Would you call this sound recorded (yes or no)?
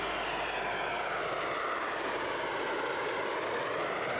yes